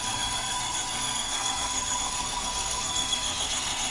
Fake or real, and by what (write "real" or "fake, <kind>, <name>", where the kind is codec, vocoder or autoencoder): fake, codec, SNAC